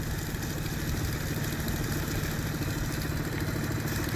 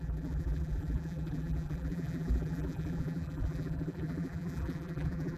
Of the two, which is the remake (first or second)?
second